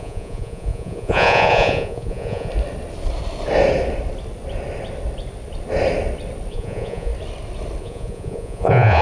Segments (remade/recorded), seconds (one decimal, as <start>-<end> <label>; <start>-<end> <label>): 0.0-2.5 remade; 2.5-6.5 recorded; 6.5-7.1 remade; 7.1-7.8 recorded; 7.8-9.0 remade